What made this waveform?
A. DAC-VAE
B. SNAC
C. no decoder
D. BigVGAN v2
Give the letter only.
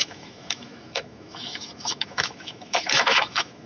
A